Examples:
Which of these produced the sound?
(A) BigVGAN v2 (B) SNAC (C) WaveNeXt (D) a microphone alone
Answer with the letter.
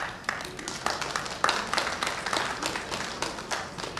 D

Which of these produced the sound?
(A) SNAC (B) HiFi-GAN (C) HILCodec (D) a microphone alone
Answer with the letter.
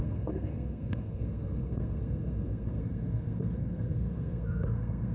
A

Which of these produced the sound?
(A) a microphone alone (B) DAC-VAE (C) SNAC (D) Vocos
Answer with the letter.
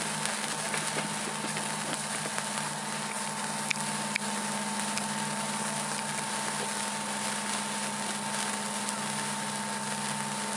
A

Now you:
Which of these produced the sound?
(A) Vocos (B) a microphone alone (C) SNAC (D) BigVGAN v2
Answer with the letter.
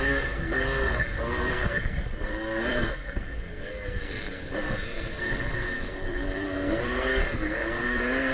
C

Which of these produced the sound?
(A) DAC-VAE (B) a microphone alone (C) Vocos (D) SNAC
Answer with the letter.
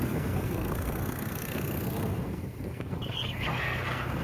D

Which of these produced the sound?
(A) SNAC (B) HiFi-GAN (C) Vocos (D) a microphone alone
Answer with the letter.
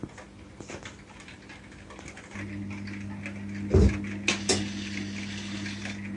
D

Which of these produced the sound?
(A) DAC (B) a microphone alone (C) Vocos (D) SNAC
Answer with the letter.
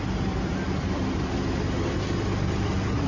B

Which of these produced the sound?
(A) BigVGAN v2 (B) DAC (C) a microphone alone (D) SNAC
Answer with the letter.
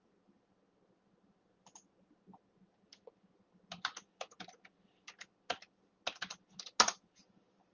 C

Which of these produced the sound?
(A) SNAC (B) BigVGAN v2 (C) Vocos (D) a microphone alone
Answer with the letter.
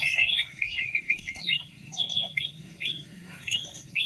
A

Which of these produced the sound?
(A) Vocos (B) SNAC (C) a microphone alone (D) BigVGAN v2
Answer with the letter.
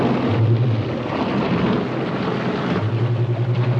C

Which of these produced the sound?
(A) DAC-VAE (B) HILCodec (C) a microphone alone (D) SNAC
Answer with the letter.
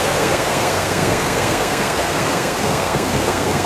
D